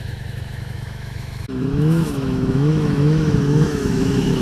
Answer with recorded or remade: remade